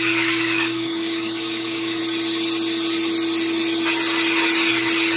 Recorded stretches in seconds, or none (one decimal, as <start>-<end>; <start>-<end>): 2.0-5.2